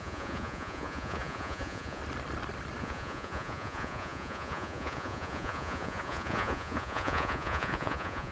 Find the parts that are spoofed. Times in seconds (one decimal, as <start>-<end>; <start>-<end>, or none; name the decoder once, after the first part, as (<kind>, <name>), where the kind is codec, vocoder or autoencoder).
0.0-2.0 (vocoder, Vocos); 2.8-8.3